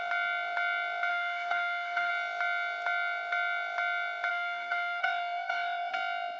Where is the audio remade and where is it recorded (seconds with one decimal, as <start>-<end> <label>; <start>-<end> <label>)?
0.0-1.1 recorded; 1.1-2.1 remade; 2.1-4.3 recorded; 4.3-5.9 remade; 5.9-6.4 recorded